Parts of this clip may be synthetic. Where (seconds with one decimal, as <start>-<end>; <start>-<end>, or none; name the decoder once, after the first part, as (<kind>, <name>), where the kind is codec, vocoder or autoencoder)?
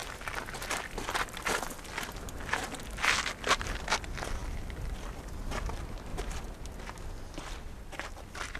3.0-6.1 (vocoder, BigVGAN v2); 7.3-8.6